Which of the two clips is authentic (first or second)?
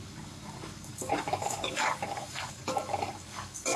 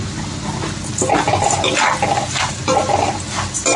second